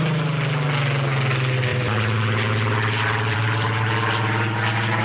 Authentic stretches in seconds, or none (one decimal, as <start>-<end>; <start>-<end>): 0.0-1.7